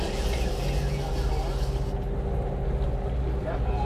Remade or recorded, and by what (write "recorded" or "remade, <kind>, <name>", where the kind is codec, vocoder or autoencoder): recorded